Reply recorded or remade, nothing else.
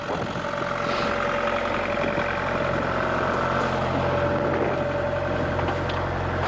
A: recorded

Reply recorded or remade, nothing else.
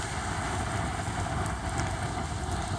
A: recorded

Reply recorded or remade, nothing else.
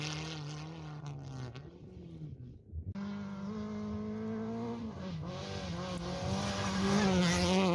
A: recorded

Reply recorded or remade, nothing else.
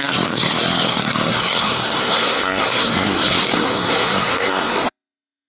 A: remade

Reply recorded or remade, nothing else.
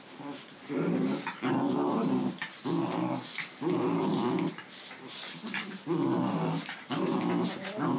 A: recorded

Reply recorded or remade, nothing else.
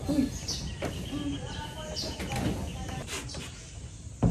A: recorded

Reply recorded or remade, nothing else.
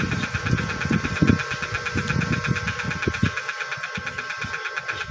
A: recorded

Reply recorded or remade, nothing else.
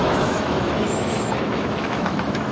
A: remade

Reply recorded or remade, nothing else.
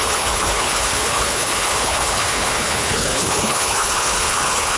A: remade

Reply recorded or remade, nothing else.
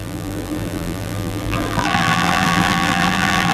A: remade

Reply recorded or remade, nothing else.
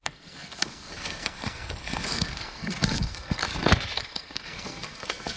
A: remade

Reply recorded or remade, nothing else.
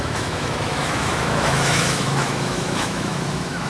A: remade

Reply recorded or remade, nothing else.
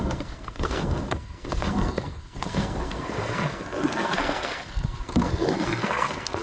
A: remade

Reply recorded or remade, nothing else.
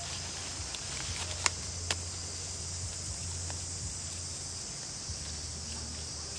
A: recorded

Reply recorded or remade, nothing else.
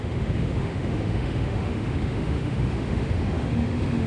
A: remade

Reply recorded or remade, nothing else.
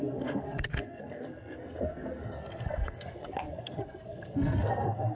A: remade